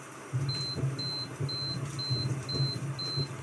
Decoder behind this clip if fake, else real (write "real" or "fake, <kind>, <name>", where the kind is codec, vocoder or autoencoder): real